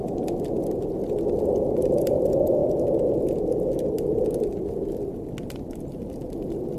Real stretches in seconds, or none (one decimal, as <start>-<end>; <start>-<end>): 0.0-6.8

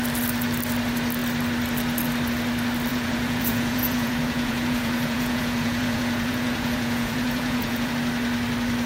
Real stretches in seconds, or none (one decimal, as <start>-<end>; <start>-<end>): 0.0-2.9; 7.9-8.9

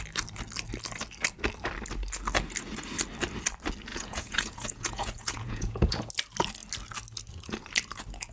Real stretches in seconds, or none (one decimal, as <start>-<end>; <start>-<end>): 0.0-3.9; 6.1-8.3

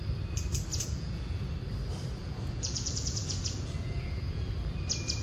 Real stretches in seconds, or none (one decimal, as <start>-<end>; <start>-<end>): 0.0-0.7; 1.5-2.2; 4.5-5.2